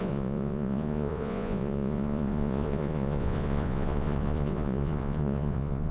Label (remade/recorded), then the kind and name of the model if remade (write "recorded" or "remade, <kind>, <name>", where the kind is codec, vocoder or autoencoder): remade, vocoder, Vocos